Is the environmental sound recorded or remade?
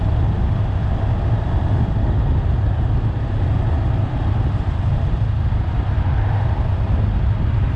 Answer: recorded